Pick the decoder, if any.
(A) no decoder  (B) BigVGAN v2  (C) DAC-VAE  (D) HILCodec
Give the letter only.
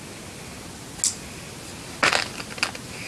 A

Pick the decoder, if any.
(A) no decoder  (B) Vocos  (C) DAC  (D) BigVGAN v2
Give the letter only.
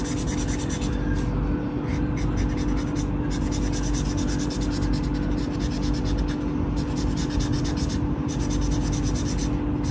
A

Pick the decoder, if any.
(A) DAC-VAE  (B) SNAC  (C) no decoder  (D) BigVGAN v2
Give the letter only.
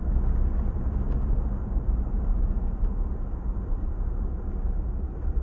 C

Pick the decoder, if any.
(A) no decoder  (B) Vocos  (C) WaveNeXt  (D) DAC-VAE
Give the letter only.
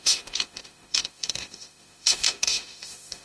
D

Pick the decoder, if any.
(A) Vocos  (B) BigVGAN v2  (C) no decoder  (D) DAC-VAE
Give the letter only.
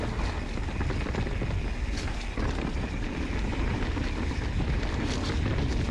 C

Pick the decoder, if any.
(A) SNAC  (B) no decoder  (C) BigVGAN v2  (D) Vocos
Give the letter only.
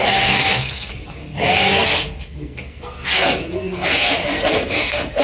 A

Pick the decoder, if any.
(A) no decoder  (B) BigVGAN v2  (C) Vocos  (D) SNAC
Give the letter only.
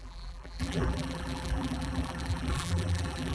B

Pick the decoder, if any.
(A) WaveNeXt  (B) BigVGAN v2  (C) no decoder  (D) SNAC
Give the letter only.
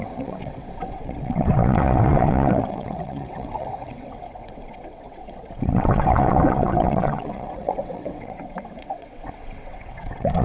A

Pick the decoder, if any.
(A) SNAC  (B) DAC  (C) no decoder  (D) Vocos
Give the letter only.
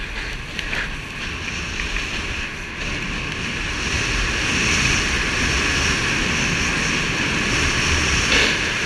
C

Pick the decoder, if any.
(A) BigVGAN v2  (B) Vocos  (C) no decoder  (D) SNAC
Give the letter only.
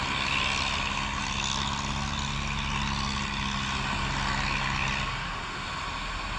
C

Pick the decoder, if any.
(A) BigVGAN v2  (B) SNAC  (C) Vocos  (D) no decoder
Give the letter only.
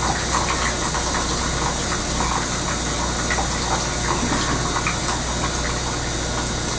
D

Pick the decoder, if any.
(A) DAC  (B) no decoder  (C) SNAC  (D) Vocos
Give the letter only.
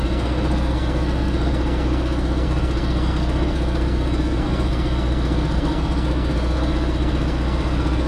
C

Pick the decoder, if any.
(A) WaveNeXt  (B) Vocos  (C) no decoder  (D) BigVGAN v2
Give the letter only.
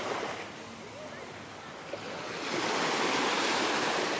C